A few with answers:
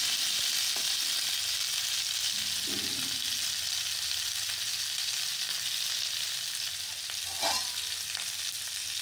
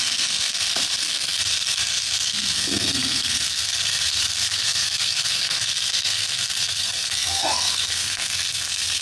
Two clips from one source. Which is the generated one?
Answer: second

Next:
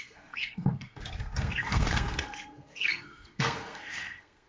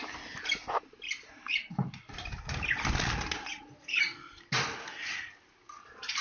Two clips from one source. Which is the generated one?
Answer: first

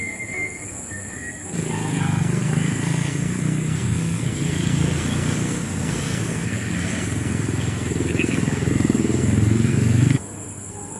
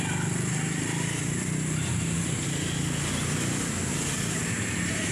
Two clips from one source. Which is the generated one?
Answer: first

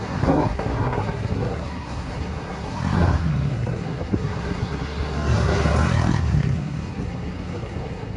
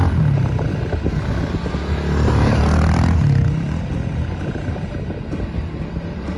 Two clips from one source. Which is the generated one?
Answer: first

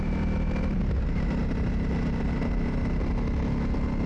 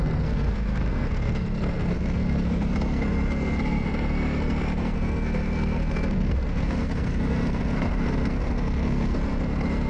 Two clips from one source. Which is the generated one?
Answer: second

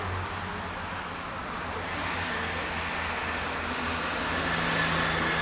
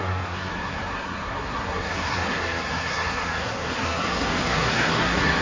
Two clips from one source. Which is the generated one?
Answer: second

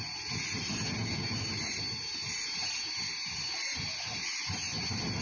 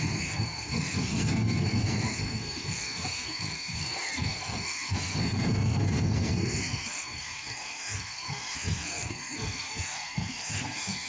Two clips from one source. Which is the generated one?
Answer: second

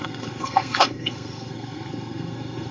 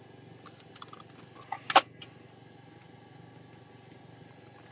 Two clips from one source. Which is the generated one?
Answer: first